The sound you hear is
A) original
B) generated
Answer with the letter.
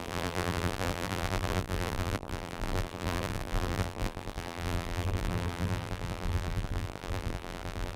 B